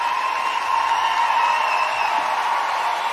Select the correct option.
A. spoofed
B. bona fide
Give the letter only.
B